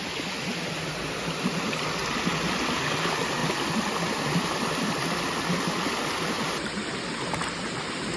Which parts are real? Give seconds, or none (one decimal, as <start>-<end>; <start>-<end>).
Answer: 0.0-3.4; 4.9-8.2